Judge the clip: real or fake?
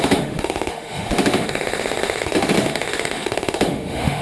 fake